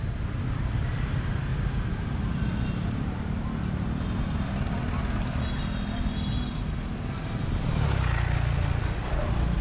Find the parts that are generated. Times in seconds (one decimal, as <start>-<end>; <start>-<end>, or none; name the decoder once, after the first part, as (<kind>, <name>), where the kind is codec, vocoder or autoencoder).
none